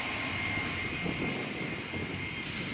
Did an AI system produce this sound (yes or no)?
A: no